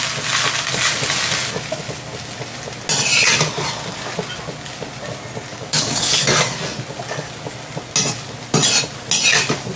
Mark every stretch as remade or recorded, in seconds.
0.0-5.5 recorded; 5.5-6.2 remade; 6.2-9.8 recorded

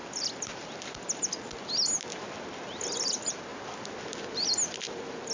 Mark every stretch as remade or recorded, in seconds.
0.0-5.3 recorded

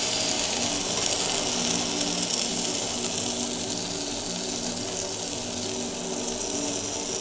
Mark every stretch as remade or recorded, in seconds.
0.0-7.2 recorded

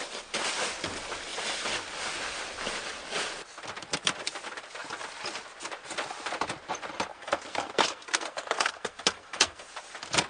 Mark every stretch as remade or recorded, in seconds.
0.0-7.1 recorded; 7.1-9.7 remade; 9.7-10.3 recorded

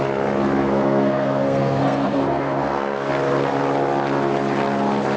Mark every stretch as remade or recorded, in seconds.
0.0-0.6 recorded; 0.6-3.1 remade; 3.1-5.2 recorded

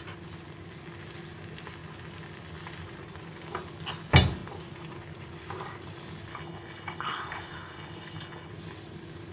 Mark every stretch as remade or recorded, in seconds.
0.0-6.3 recorded; 6.3-8.5 remade; 8.5-9.3 recorded